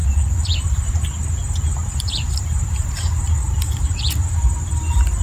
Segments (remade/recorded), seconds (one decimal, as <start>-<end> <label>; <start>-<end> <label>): 0.0-0.9 remade; 0.9-1.8 recorded; 1.8-5.2 remade